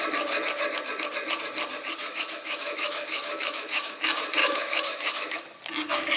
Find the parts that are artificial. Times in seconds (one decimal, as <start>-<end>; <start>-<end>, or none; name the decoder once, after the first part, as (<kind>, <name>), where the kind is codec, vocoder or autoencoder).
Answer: 2.0-4.0 (autoencoder, DAC-VAE); 4.4-5.4